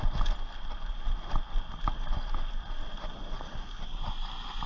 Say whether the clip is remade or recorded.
recorded